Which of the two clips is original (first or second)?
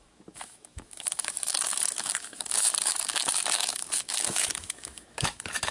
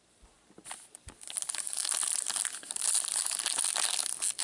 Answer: second